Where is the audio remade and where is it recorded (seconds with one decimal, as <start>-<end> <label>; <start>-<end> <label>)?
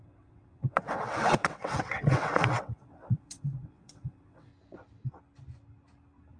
0.0-4.5 remade; 4.5-6.4 recorded